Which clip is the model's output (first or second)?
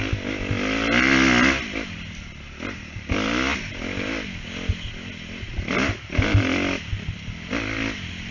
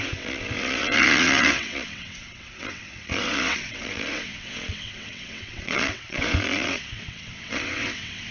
second